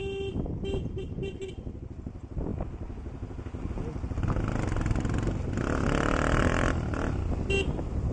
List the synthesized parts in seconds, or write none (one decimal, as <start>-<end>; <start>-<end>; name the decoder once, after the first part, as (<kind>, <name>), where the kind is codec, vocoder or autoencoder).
none